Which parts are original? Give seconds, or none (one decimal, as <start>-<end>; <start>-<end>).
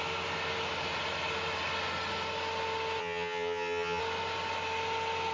0.0-3.0; 4.0-5.3